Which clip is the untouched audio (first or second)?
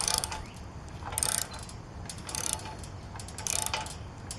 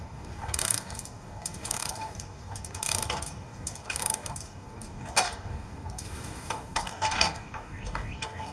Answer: first